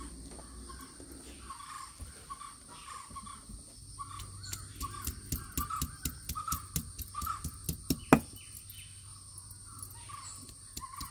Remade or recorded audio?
recorded